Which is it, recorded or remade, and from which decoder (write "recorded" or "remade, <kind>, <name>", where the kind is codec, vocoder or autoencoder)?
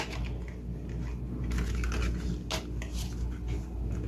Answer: recorded